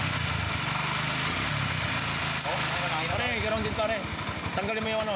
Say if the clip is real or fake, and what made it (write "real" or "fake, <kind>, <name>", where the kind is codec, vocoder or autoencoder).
real